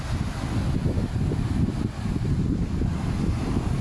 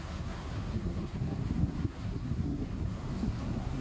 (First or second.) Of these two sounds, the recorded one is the first